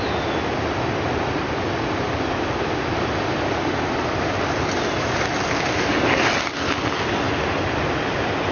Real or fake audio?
real